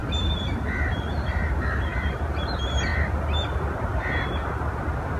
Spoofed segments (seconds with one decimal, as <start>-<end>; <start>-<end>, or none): 0.0-0.6